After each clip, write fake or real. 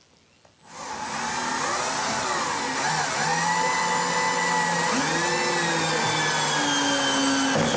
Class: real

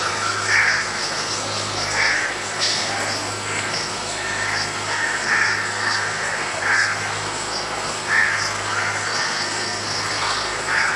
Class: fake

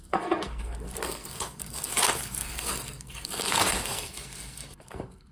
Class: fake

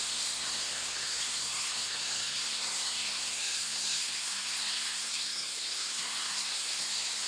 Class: fake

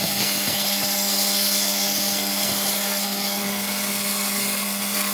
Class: fake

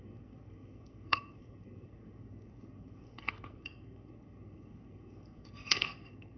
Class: fake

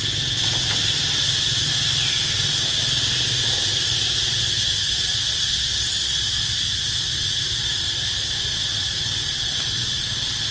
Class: real